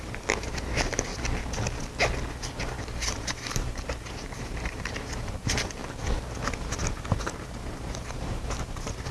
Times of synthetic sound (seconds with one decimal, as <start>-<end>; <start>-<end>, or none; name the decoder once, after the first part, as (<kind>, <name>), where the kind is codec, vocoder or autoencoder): 0.0-1.1 (vocoder, BigVGAN v2); 2.3-5.8; 6.6-9.1